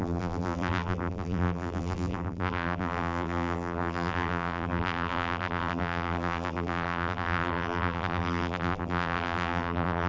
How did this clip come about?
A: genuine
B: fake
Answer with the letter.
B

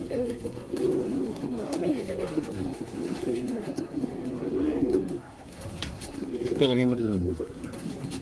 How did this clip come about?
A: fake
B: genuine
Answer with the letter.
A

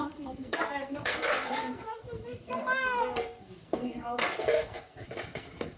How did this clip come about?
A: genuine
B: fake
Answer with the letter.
B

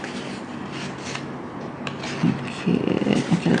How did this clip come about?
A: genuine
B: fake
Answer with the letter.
A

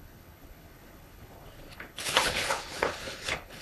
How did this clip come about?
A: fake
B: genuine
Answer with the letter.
A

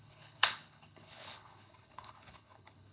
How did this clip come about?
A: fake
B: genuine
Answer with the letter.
A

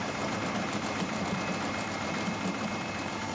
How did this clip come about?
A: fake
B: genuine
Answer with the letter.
A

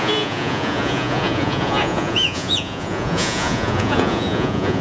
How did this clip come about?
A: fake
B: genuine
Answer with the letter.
A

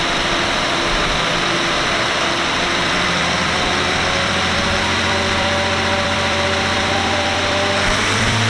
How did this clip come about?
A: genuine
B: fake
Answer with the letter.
B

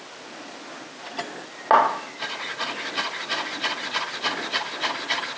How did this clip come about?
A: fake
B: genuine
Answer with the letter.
B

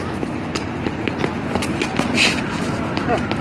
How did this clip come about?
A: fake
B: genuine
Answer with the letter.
B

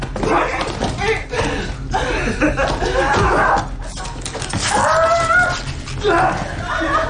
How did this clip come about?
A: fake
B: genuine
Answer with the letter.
B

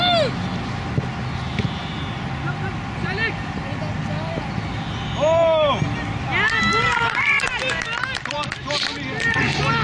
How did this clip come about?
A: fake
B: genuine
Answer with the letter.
B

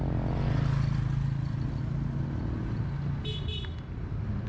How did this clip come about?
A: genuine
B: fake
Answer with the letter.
A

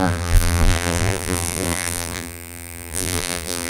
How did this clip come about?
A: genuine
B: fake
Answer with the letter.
B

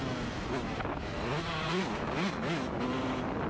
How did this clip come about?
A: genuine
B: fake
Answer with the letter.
A